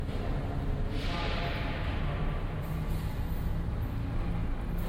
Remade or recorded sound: recorded